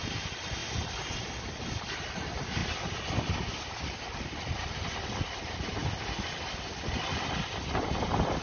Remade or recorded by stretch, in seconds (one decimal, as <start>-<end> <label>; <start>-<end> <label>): 0.0-8.4 recorded